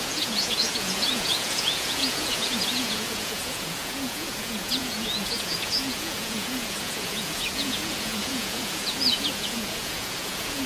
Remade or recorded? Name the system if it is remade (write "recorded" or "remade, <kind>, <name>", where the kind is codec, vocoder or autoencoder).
remade, vocoder, Vocos